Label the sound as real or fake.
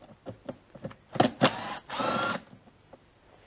real